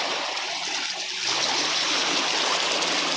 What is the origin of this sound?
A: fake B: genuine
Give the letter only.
B